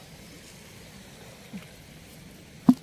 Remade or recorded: recorded